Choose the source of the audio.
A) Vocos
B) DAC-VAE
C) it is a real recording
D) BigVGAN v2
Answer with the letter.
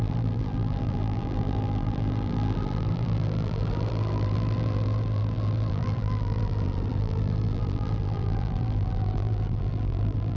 D